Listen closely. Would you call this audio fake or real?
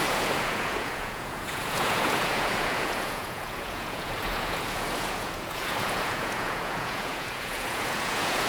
fake